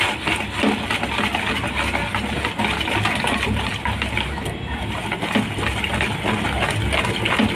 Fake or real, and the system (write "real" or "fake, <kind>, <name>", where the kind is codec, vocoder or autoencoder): real